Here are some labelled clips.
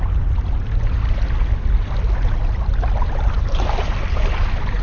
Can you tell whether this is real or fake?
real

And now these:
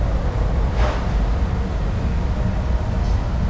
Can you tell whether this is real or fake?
real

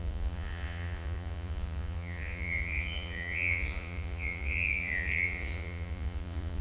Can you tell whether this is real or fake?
fake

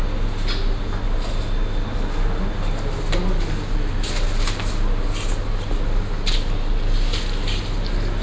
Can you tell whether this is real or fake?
real